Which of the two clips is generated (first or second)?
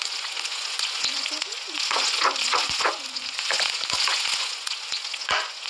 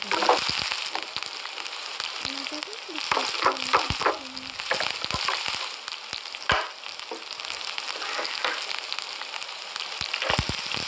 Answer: first